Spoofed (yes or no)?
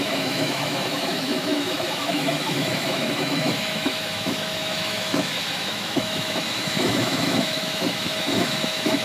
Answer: yes